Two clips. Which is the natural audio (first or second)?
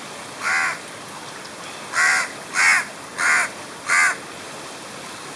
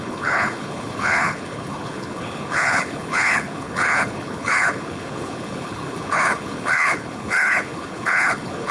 first